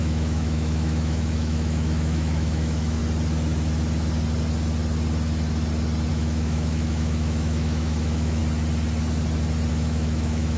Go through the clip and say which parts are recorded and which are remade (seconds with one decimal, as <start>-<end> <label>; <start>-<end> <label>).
0.0-3.0 remade; 3.0-6.1 recorded; 6.1-8.4 remade; 8.4-9.7 recorded; 9.7-10.6 remade